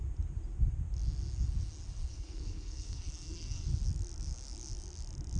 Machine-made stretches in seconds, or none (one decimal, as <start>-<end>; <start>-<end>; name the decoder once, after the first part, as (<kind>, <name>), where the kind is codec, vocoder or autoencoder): 2.1-3.7 (codec, SNAC)